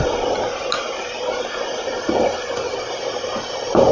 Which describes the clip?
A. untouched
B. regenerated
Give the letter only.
A